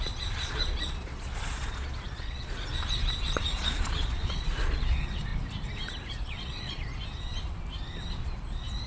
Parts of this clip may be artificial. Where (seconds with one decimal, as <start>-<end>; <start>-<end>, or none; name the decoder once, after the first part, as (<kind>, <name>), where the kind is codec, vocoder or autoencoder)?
0.0-5.3 (vocoder, Vocos); 6.1-6.9; 8.2-8.9